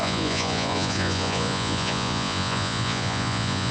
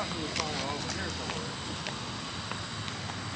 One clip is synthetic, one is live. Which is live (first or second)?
second